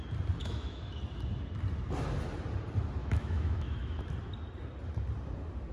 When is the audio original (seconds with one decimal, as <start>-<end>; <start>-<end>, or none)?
0.0-0.4; 1.0-3.0; 4.1-5.7